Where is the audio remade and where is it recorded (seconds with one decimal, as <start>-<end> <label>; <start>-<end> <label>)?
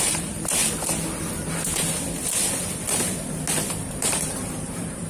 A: 0.0-0.6 remade; 0.6-3.7 recorded; 3.7-5.1 remade